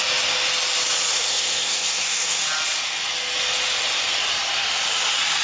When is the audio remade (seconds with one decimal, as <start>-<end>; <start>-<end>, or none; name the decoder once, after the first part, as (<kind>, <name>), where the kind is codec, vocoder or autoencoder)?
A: 1.1-2.4 (codec, SNAC)